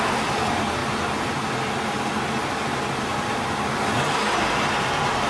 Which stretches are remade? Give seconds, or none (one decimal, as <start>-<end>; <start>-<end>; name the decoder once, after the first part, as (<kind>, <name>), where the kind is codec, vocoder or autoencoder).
3.1-3.8 (vocoder, BigVGAN v2)